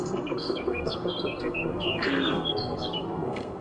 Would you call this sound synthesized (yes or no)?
yes